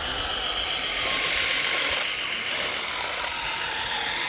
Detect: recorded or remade recorded